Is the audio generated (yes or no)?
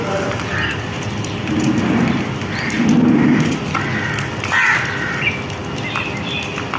no